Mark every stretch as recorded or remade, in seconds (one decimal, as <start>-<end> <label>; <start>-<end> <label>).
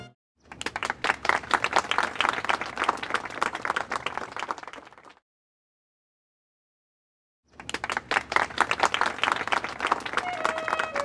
0.0-4.6 recorded; 4.6-5.1 remade; 5.1-11.0 recorded